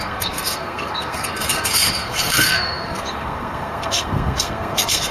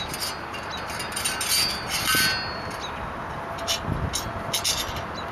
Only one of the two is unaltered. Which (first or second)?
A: second